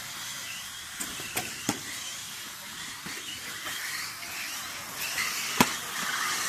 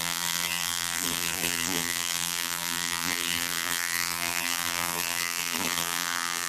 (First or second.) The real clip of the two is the first